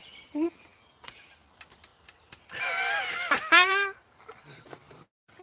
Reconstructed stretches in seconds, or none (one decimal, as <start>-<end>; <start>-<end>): 0.0-1.1; 1.9-5.4